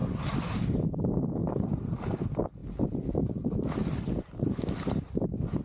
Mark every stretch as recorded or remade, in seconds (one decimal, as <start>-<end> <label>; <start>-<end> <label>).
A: 0.0-5.6 recorded